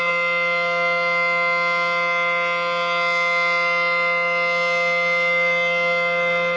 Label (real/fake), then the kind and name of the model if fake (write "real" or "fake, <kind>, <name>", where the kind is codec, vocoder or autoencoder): real